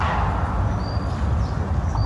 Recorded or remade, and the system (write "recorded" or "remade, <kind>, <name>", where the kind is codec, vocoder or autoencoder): recorded